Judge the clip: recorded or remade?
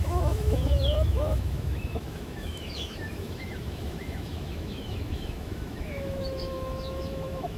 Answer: remade